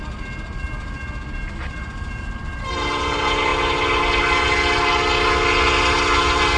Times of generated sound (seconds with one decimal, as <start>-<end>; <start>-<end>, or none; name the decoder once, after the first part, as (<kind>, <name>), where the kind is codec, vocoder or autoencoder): none